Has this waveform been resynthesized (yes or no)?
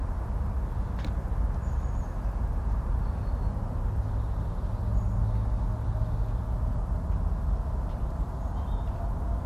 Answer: no